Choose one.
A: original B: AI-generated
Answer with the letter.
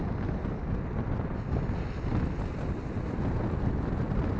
A